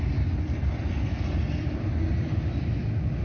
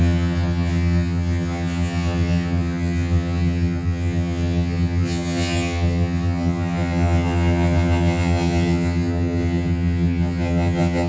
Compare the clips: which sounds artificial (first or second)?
second